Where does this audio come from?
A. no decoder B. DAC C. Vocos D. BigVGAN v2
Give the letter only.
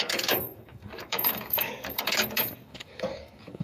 B